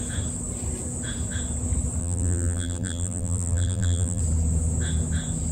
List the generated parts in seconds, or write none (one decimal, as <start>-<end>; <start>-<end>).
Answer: 2.0-4.2